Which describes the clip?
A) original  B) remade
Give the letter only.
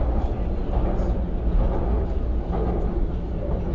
A